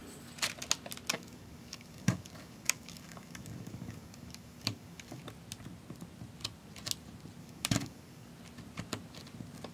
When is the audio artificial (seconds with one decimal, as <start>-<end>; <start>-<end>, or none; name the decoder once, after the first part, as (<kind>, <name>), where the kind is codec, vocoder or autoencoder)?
1.1-5.2 (codec, DAC); 7.4-8.3